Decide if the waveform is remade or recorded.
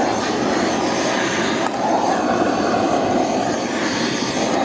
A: recorded